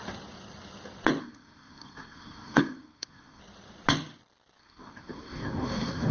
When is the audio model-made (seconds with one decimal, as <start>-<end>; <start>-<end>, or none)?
1.2-3.4; 4.6-6.1